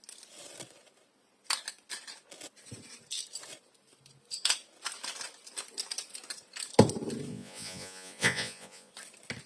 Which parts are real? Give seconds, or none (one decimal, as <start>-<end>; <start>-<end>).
0.0-7.3; 8.9-9.5